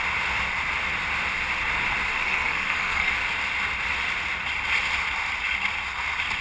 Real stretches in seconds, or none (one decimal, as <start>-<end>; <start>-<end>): 0.0-2.1; 3.1-6.4